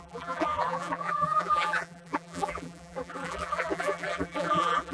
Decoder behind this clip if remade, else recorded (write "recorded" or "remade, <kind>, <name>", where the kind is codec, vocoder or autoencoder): remade, vocoder, BigVGAN v2